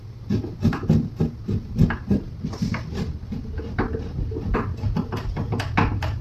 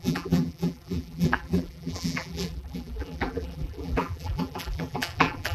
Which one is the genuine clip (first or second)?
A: first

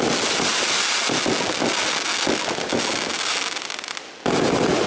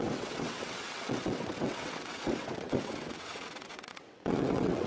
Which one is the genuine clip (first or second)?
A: first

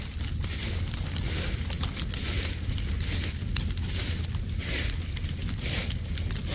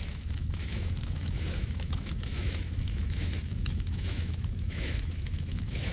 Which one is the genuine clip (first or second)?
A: first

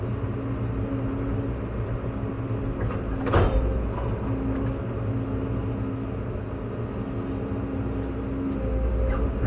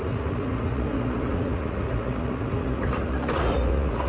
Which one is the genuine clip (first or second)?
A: first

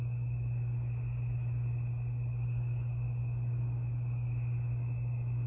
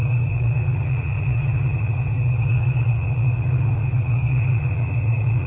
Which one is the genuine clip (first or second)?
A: first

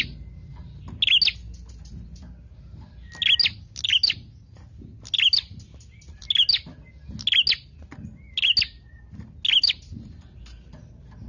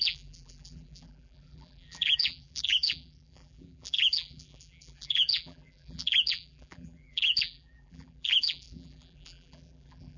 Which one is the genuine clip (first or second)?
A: first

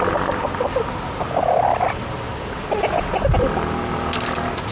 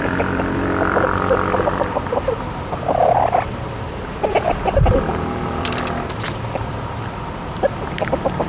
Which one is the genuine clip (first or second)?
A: first